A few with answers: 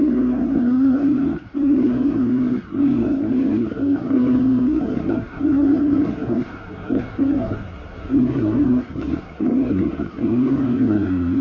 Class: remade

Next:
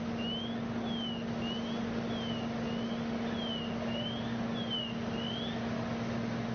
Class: recorded